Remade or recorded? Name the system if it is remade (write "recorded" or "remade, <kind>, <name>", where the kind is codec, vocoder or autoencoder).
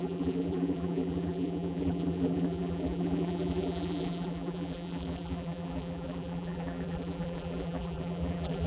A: remade, vocoder, BigVGAN v2